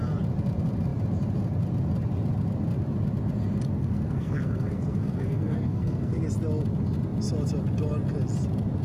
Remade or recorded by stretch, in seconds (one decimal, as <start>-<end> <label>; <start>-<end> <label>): 0.0-3.8 recorded; 3.8-6.2 remade; 6.2-8.8 recorded